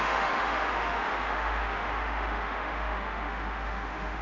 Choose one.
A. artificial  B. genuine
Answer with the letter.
A